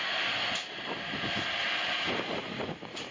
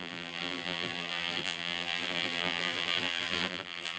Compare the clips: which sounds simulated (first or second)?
second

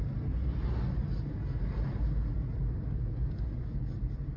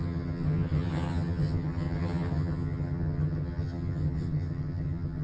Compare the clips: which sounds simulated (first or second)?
second